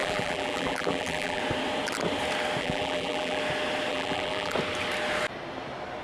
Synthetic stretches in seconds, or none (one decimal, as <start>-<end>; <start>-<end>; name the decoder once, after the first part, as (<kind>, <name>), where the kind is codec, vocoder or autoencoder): 0.0-1.4 (vocoder, BigVGAN v2); 2.6-3.4; 3.9-4.5